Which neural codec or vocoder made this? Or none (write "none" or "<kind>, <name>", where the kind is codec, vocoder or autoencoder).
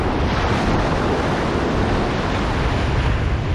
none